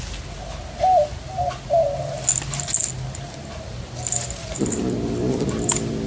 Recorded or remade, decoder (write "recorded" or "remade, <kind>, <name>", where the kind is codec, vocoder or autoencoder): recorded